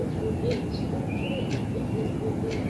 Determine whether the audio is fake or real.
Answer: real